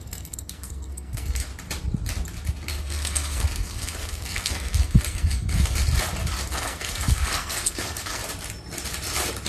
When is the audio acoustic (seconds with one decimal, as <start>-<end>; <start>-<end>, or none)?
1.5-2.7; 5.8-6.5; 8.2-9.5